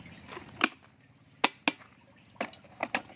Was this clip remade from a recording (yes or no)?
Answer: no